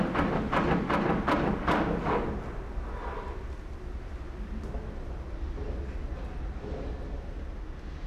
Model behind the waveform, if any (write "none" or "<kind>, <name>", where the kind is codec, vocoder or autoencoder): none